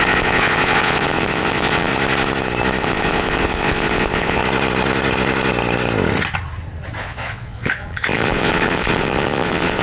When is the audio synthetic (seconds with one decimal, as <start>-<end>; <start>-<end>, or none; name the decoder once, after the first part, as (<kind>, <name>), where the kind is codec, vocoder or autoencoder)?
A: 0.0-1.9 (vocoder, Vocos); 2.8-4.4; 7.0-9.8